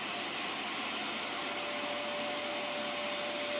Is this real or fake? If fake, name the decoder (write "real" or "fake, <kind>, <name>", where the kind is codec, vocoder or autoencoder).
real